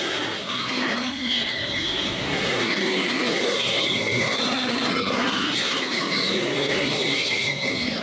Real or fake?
fake